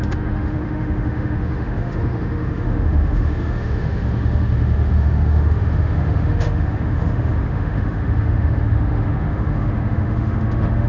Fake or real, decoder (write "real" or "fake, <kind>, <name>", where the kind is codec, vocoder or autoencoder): fake, autoencoder, DAC-VAE